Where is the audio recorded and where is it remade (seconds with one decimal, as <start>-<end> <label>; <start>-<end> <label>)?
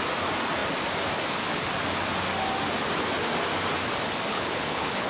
0.0-4.3 recorded; 4.3-5.1 remade